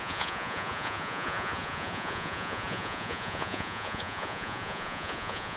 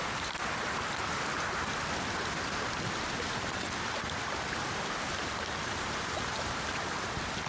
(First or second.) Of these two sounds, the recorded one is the second